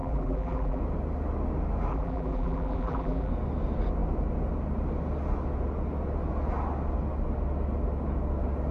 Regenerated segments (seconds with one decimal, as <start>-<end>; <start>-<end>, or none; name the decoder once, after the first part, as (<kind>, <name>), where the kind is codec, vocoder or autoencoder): 0.0-0.8 (vocoder, BigVGAN v2); 1.9-3.3